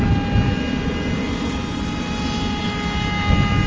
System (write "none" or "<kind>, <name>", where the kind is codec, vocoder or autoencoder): none